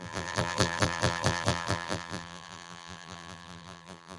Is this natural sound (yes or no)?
no